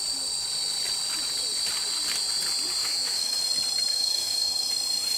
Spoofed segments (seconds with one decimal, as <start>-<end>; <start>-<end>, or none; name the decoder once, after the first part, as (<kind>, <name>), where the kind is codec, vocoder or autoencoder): 2.8-3.4 (autoencoder, DAC-VAE); 3.9-4.7

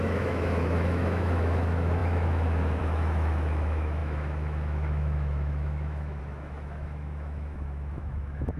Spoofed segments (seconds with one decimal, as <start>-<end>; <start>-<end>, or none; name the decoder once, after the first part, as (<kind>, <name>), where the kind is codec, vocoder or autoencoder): 0.0-8.6 (autoencoder, DAC-VAE)

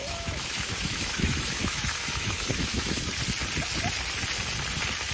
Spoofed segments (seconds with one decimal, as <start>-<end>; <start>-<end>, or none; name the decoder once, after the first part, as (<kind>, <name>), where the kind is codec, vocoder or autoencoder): 0.0-3.1 (autoencoder, DAC-VAE)